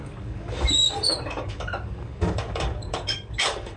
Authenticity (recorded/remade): remade